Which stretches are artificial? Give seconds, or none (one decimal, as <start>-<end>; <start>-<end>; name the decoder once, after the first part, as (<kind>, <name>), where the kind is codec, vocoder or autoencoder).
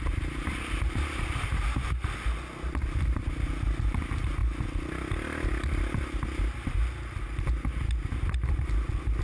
none